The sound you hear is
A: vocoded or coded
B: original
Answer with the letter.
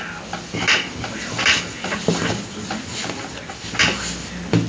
B